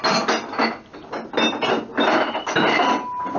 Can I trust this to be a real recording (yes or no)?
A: yes